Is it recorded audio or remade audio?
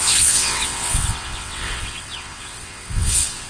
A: remade